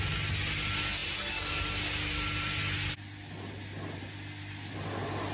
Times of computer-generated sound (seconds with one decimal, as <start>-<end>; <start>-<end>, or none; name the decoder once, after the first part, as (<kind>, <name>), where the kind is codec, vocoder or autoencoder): none